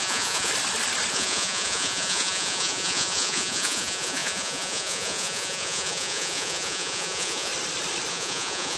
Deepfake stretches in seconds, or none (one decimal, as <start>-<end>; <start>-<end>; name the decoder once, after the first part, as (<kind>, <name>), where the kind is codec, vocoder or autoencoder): 0.0-0.5 (vocoder, Vocos); 1.1-7.5; 8.1-8.8